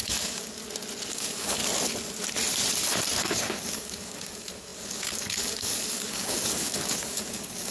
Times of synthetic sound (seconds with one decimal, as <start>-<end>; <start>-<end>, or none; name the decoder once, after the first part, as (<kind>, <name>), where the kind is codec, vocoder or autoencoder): 0.0-0.6 (codec, DAC); 1.1-1.6; 3.2-7.7